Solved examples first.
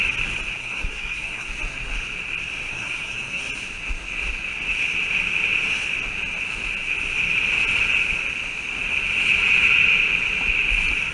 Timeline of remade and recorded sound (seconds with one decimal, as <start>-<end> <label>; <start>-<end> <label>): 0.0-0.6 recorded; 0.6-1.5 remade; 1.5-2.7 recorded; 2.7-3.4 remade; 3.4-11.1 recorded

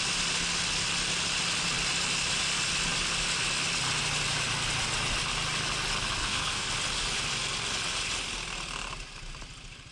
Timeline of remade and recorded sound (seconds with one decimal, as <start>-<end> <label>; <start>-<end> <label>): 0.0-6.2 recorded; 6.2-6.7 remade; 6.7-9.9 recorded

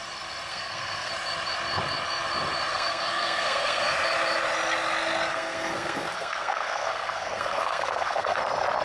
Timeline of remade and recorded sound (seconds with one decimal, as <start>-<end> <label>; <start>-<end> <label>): 0.0-0.5 recorded; 0.5-1.1 remade; 1.1-2.7 recorded; 2.7-3.8 remade; 3.8-5.3 recorded; 5.3-8.4 remade; 8.4-8.8 recorded

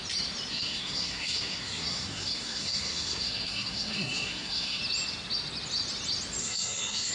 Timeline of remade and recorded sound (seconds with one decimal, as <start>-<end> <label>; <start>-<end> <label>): 0.0-0.5 recorded; 0.5-4.8 remade; 4.8-6.4 recorded; 6.4-7.1 remade

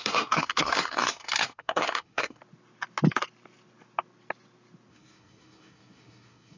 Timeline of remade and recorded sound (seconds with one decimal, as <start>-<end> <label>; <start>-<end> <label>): 0.0-2.4 remade; 2.4-4.9 recorded; 4.9-6.6 remade

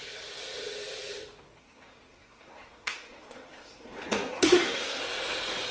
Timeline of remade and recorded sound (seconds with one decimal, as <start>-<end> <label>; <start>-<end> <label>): 0.0-1.6 recorded; 1.6-5.0 remade; 5.0-5.7 recorded